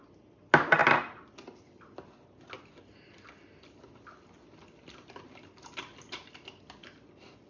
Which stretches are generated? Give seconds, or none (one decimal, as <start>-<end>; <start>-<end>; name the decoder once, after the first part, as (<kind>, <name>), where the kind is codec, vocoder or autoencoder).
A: none